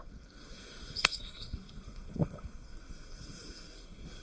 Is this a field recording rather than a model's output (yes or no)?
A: no